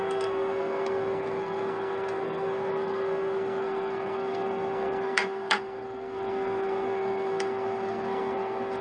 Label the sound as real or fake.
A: fake